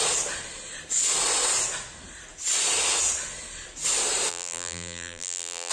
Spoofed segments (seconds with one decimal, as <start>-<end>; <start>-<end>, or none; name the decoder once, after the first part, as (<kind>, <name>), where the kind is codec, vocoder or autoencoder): 4.3-5.7 (vocoder, BigVGAN v2)